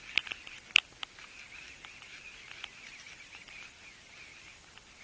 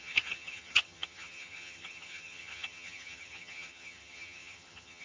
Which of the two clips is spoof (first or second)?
second